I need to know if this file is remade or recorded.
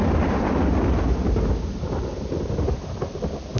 recorded